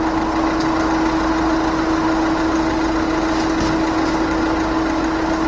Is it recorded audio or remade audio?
recorded